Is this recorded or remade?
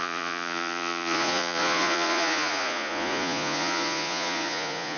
remade